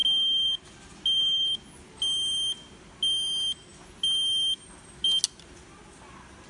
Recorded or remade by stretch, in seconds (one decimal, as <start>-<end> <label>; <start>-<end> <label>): 0.0-6.5 recorded